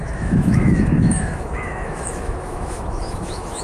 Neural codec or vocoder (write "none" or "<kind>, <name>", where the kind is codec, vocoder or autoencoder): autoencoder, DAC-VAE